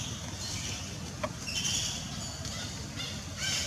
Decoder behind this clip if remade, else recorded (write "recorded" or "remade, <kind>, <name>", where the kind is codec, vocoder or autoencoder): remade, vocoder, BigVGAN v2